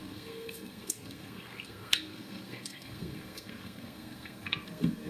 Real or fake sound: fake